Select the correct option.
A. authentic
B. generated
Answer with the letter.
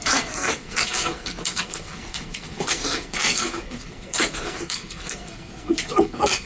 B